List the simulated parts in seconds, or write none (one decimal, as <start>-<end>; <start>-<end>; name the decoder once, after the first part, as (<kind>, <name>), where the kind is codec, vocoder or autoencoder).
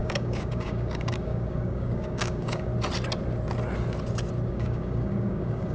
0.0-2.7 (codec, DAC); 4.5-5.7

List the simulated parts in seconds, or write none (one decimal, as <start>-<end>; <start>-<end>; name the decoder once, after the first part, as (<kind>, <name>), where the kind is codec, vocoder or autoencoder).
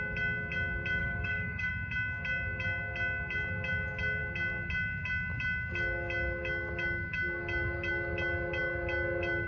1.0-1.7 (codec, DAC)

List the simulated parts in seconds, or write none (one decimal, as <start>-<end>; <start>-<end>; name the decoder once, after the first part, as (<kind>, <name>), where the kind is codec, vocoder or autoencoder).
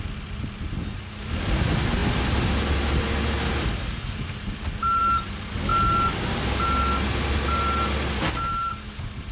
none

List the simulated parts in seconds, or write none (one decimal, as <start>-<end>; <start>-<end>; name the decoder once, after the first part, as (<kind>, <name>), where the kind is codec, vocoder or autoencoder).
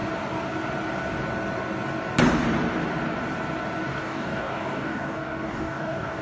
3.9-6.2 (codec, DAC)